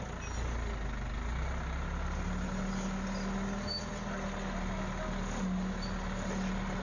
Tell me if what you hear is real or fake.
real